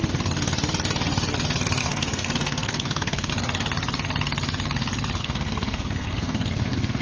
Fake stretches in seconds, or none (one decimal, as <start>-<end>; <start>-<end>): 1.8-3.3; 5.2-7.0